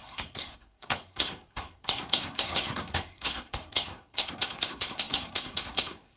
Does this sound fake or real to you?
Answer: fake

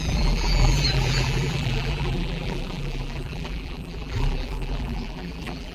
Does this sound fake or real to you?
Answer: fake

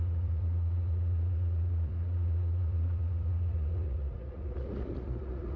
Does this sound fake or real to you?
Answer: fake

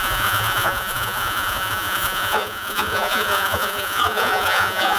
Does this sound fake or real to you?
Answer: fake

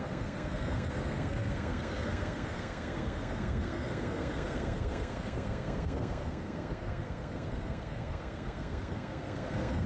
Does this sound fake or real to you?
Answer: fake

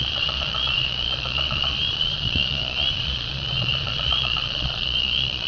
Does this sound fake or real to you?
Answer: fake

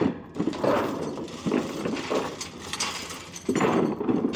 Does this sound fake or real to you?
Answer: fake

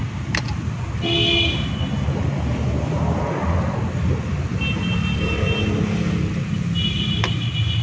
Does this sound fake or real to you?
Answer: real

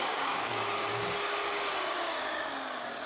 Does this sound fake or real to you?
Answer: fake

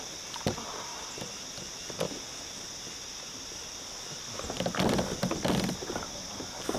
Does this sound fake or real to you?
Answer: real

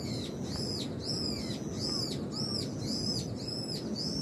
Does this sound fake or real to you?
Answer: real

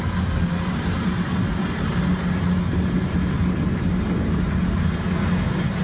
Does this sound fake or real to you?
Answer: real